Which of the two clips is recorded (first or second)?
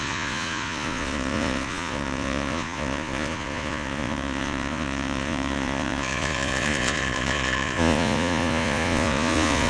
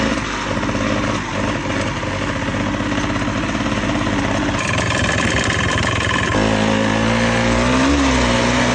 second